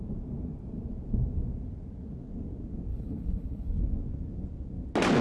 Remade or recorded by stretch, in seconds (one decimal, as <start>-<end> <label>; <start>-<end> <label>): 0.0-2.9 recorded; 2.9-3.8 remade; 3.8-5.2 recorded